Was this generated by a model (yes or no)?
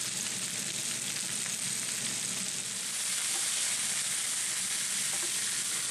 no